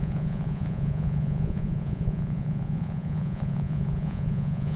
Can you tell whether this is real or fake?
fake